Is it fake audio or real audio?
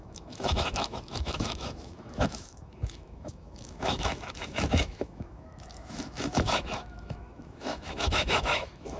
fake